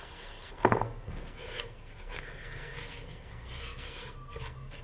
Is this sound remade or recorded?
remade